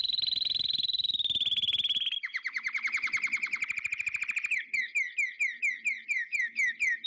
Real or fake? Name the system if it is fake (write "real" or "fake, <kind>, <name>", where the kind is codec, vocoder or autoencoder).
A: real